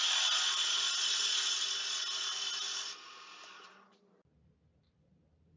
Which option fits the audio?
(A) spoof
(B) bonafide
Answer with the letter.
B